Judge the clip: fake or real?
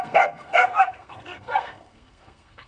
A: fake